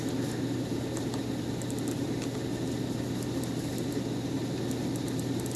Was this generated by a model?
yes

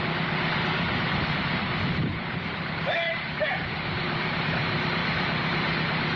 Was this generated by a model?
yes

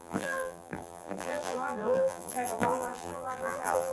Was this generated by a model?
yes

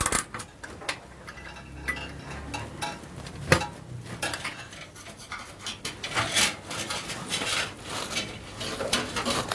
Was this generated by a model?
no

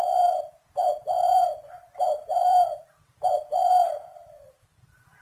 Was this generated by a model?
yes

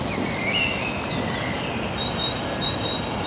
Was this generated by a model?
no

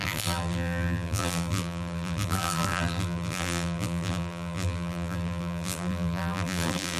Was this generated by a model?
yes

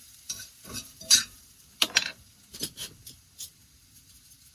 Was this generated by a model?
yes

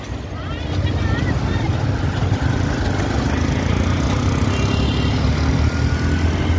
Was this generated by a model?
no